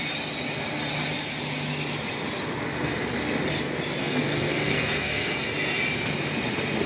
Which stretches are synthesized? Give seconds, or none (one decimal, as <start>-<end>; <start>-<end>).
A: 4.0-5.5